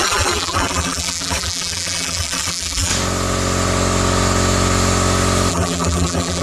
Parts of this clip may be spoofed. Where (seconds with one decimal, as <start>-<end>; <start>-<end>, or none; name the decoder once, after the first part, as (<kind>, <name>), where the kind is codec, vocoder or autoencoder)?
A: 0.0-2.9 (vocoder, BigVGAN v2); 5.5-6.4